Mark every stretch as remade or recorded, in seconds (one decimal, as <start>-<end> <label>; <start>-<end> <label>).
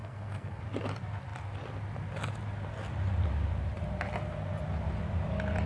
0.0-0.6 remade; 0.6-5.7 recorded